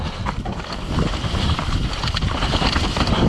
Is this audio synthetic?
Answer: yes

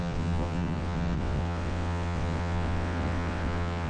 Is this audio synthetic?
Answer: yes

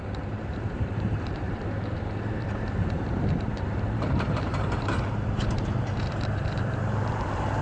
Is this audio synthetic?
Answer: yes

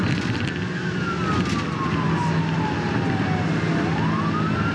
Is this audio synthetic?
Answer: no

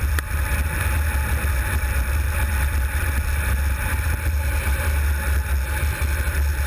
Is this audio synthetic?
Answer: no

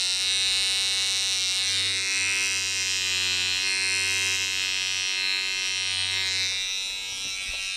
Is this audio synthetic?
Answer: no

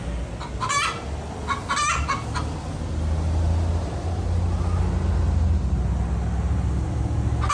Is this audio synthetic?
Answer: no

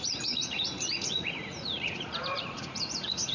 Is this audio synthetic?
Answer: yes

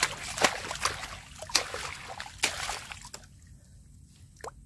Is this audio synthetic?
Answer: no